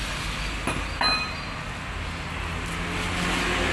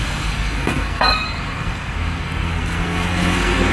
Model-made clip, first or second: second